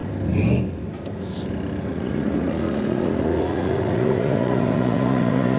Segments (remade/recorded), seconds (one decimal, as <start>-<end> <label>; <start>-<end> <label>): 0.0-1.9 recorded; 1.9-5.6 remade